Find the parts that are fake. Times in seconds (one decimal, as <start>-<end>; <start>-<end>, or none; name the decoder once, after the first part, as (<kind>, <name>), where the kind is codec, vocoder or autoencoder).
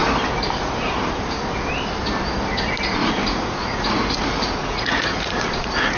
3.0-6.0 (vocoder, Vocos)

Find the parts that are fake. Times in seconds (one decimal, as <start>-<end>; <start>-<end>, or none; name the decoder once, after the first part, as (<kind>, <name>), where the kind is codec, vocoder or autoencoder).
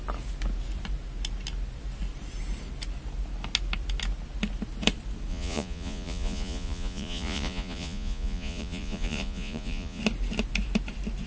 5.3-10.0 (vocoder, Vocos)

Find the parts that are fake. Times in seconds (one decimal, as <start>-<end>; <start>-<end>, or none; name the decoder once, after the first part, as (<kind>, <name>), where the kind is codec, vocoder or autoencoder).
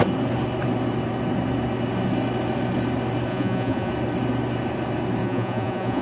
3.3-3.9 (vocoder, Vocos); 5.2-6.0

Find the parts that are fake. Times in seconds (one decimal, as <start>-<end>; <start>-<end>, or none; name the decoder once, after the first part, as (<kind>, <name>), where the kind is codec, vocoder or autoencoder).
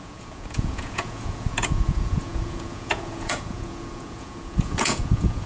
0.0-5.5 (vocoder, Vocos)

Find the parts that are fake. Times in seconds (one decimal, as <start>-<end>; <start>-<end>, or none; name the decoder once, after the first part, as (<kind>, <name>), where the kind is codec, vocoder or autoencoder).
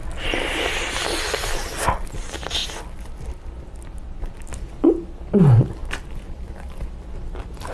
none